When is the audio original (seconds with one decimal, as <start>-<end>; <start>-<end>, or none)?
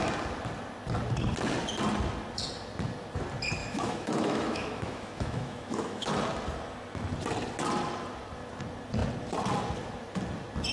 0.0-3.6; 6.1-10.7